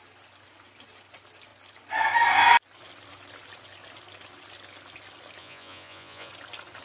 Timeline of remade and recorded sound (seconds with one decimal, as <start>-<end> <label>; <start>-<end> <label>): 0.0-5.4 recorded; 5.4-6.3 remade; 6.3-6.8 recorded